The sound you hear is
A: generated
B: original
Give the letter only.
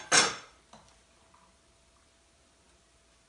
B